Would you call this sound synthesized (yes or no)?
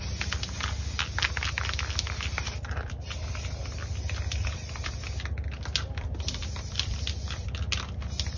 no